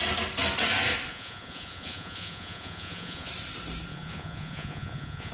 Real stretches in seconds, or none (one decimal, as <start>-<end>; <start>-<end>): 0.0-1.1; 3.3-3.9